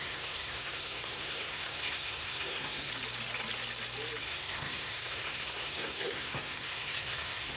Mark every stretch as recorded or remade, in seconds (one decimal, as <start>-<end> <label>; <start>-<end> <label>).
0.0-2.9 remade; 2.9-4.2 recorded; 4.2-7.6 remade

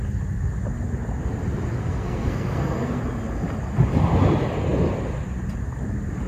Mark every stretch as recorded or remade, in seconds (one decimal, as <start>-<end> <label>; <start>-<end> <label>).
0.0-1.8 recorded; 1.8-3.0 remade; 3.0-6.3 recorded